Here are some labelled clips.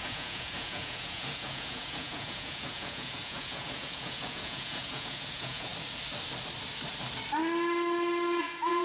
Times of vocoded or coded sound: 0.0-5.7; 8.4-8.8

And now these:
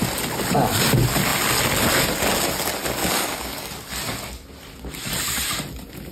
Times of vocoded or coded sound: 3.0-3.7

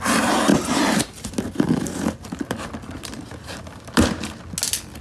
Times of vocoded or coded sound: none

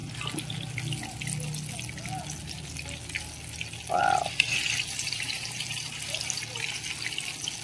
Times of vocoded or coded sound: 5.0-6.4